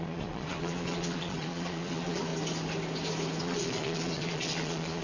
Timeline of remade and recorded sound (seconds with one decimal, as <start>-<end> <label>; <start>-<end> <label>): 0.0-2.3 remade; 2.3-3.4 recorded; 3.4-5.0 remade